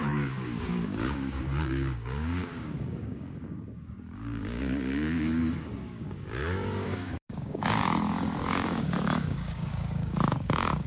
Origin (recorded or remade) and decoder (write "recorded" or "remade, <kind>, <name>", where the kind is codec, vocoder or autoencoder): remade, codec, DAC